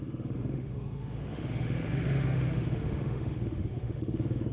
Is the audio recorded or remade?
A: remade